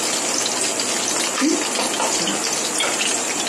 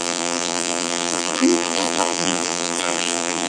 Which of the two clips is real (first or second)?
first